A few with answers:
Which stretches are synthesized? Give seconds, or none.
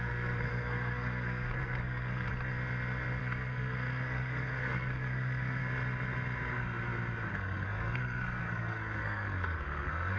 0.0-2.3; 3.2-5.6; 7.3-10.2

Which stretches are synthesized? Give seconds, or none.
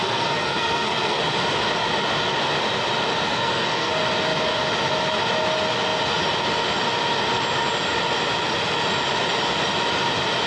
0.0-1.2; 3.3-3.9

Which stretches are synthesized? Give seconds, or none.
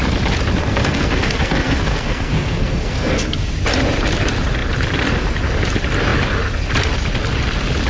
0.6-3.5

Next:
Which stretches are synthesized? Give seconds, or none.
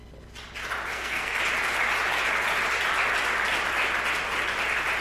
0.9-1.4